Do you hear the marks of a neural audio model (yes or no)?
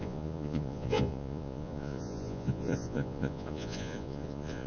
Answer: yes